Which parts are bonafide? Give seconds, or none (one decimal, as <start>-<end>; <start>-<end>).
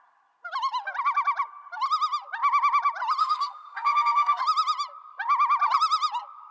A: 0.0-3.2; 4.4-6.5